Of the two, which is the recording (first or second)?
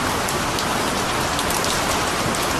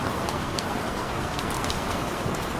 first